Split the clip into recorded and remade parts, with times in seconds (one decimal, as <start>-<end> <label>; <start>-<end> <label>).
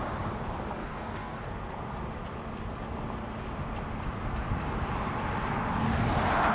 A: 0.0-0.8 recorded; 0.8-1.4 remade; 1.4-6.5 recorded